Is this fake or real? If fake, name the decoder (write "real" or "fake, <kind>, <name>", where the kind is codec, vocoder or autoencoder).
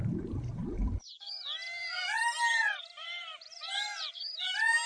fake, vocoder, BigVGAN v2